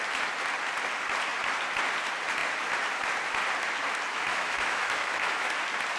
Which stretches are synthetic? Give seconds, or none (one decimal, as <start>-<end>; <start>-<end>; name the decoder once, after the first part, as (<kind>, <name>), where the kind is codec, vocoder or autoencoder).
4.1-5.5 (autoencoder, DAC-VAE)